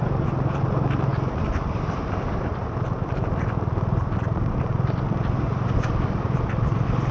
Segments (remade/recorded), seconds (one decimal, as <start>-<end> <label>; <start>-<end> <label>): 0.0-1.1 remade; 1.1-1.8 recorded; 1.8-7.1 remade